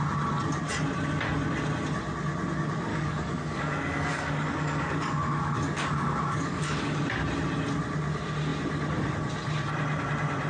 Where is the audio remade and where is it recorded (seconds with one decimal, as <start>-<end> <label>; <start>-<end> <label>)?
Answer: 0.0-2.9 recorded; 2.9-7.0 remade; 7.0-10.5 recorded